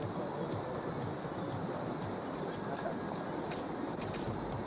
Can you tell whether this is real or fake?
real